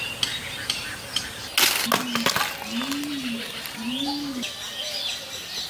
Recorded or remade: recorded